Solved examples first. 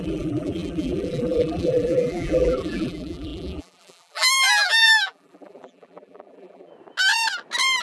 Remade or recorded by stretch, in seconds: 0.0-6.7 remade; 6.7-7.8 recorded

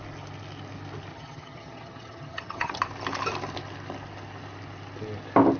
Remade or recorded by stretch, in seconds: 0.0-1.1 recorded; 1.1-2.8 remade; 2.8-5.6 recorded

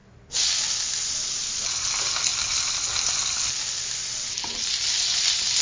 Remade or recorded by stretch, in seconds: 0.0-5.6 recorded

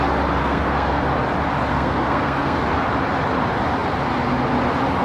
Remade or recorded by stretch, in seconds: 0.0-0.4 recorded; 0.4-1.0 remade; 1.0-1.7 recorded; 1.7-2.6 remade; 2.6-5.0 recorded

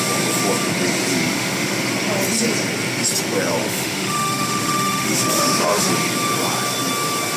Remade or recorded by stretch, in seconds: 0.0-1.1 recorded; 1.1-1.9 remade; 1.9-3.6 recorded; 3.6-5.9 remade; 5.9-7.4 recorded

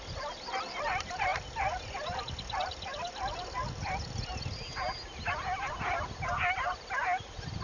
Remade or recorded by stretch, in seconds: 0.0-7.6 recorded

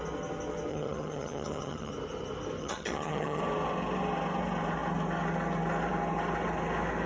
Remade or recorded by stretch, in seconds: 0.0-0.7 recorded; 0.7-1.9 remade; 1.9-2.6 recorded; 2.6-3.4 remade; 3.4-7.1 recorded